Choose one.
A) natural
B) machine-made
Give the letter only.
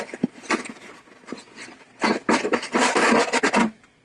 A